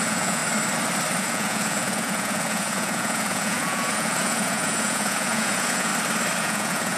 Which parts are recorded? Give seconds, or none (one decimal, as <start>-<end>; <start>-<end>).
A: 0.4-1.2; 5.9-6.4